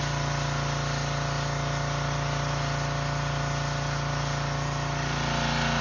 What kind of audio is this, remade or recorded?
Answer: recorded